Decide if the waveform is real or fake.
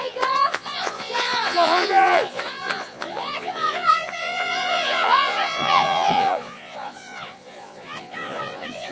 fake